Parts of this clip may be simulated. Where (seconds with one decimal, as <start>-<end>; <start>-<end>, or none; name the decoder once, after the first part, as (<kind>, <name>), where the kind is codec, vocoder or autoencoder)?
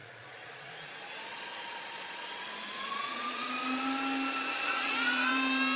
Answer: 0.0-3.5 (vocoder, Vocos); 4.5-5.3